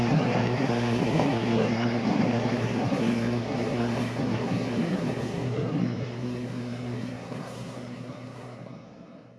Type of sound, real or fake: fake